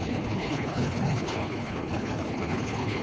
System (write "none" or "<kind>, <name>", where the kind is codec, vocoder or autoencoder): codec, HILCodec